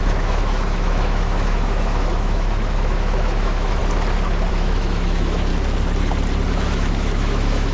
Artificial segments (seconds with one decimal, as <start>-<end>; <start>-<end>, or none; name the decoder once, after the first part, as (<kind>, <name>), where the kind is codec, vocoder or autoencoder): 0.0-3.8 (autoencoder, DAC-VAE); 4.5-5.5; 6.5-7.7